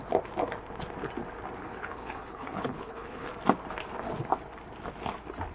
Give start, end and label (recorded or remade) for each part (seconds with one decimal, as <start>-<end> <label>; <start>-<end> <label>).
0.0-1.6 recorded; 1.6-3.3 remade; 3.3-5.5 recorded